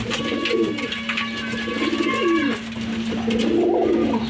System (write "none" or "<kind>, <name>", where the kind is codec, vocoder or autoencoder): none